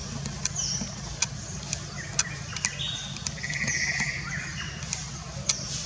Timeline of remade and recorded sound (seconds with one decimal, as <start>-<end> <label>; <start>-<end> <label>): 0.0-5.9 recorded